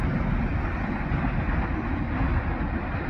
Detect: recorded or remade recorded